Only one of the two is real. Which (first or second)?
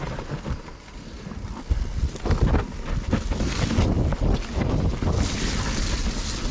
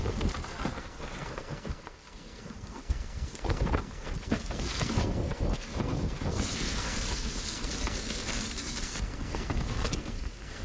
first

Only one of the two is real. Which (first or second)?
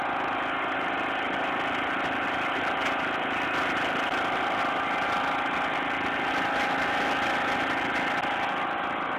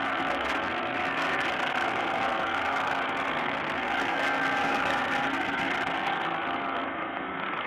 first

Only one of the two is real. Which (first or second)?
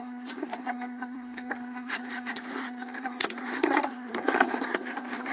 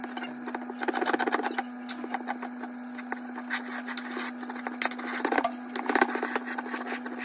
second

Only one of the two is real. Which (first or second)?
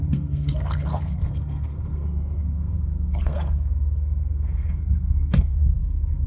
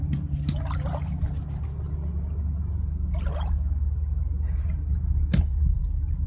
second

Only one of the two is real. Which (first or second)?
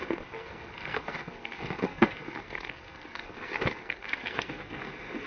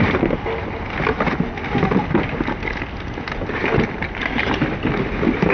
second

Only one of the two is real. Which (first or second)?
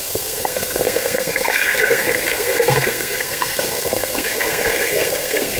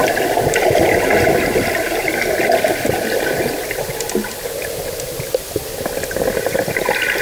second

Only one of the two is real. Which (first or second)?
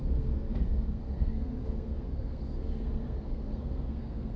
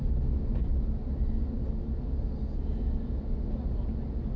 second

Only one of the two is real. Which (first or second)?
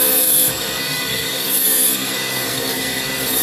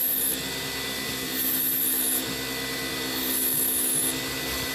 second